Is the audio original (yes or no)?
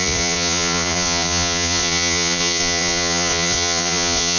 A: no